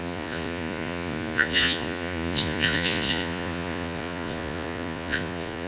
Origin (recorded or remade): remade